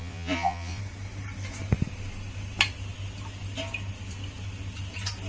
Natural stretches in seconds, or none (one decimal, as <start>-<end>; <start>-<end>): 0.8-5.3